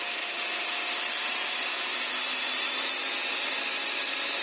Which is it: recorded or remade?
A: recorded